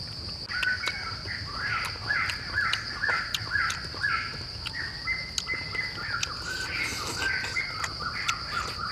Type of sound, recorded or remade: recorded